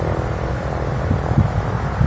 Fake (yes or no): no